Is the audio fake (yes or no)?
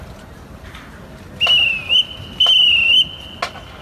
no